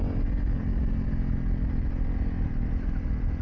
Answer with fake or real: real